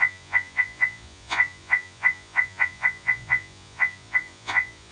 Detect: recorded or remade remade